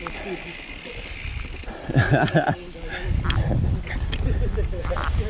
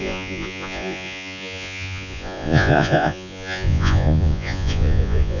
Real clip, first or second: first